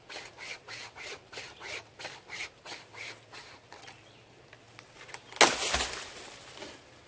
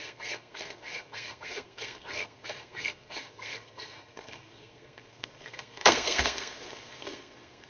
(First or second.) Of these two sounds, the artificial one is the second